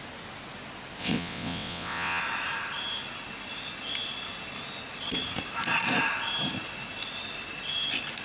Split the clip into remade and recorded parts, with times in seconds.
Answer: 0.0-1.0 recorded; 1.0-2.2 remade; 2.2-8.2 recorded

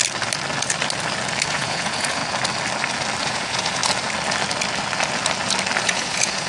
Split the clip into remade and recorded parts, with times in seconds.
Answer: 0.0-1.5 recorded; 1.5-2.2 remade; 2.2-3.2 recorded; 3.2-3.8 remade; 3.8-5.8 recorded; 5.8-6.5 remade

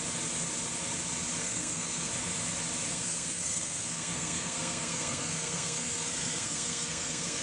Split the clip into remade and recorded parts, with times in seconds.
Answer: 0.0-1.4 recorded; 1.4-2.1 remade; 2.1-2.9 recorded; 2.9-7.4 remade

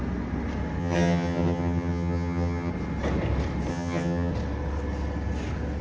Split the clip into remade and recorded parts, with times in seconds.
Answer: 0.0-0.8 recorded; 0.8-2.7 remade; 2.7-3.7 recorded; 3.7-4.3 remade; 4.3-5.8 recorded

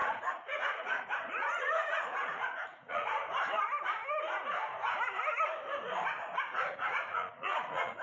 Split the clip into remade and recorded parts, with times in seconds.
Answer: 0.0-3.2 remade; 3.2-6.7 recorded; 6.7-8.0 remade